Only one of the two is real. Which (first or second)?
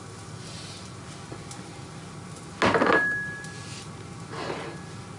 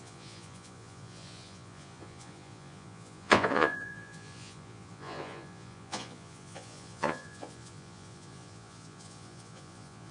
first